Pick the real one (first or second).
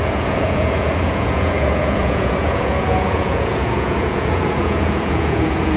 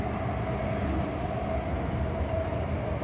second